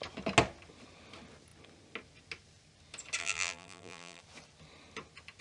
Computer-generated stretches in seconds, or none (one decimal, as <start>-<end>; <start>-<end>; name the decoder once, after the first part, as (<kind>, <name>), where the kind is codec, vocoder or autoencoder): 3.2-4.2 (vocoder, BigVGAN v2)